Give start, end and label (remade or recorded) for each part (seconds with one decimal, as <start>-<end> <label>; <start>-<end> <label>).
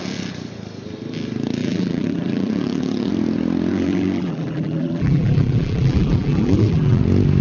0.0-1.6 recorded; 1.6-3.1 remade; 3.1-3.7 recorded; 3.7-7.0 remade; 7.0-7.4 recorded